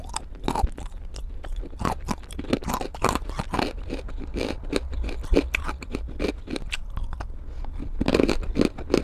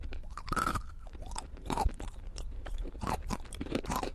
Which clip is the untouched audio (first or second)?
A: first